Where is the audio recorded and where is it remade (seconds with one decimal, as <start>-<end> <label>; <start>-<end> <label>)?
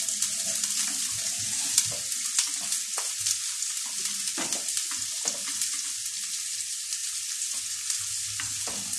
0.0-7.0 recorded; 7.0-7.7 remade; 7.7-9.0 recorded